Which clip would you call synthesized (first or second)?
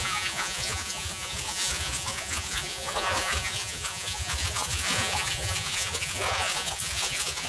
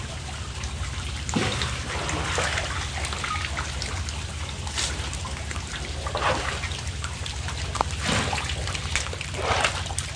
first